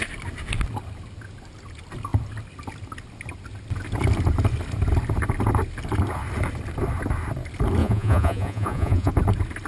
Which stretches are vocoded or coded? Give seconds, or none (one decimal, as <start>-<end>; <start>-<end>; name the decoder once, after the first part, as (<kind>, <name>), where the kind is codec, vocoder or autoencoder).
7.8-9.1 (vocoder, Vocos)